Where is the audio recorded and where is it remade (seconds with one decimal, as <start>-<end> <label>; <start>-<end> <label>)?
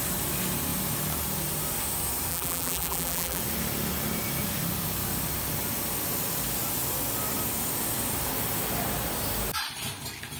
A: 0.0-2.3 recorded; 2.3-3.4 remade; 3.4-10.4 recorded